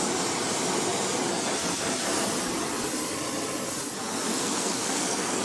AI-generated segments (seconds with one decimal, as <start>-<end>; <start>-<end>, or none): 4.3-5.4